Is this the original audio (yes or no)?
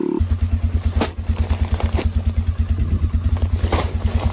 yes